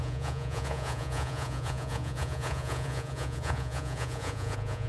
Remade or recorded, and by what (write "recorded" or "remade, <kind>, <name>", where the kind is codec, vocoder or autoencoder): remade, vocoder, Vocos